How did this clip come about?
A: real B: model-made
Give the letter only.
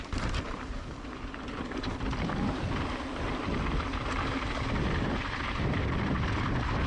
B